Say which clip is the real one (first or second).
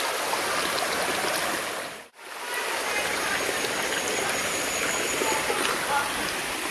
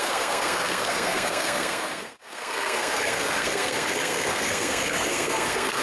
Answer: first